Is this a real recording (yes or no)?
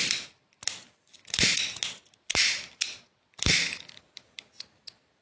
yes